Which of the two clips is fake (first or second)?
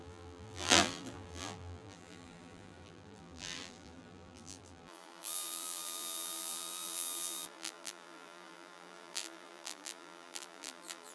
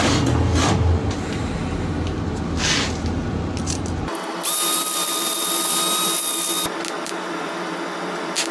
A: first